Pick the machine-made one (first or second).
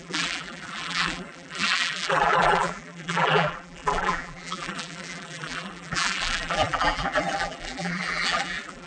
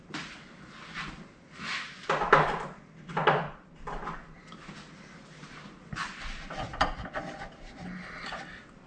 first